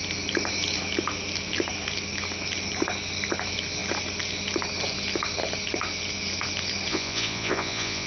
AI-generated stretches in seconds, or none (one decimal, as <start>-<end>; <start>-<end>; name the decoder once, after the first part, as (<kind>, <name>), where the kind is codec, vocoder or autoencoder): 6.9-8.1 (vocoder, Vocos)